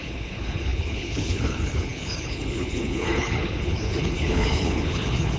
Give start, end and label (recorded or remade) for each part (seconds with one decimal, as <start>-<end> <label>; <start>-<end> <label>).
0.0-5.4 remade